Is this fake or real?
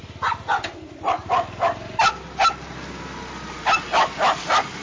real